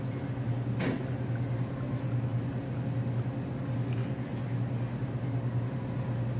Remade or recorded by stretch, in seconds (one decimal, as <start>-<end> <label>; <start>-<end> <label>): 0.0-6.4 recorded